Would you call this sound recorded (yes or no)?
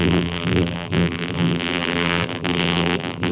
no